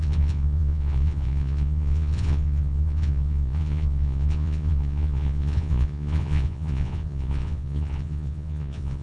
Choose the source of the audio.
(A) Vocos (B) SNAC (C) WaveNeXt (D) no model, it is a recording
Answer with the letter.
A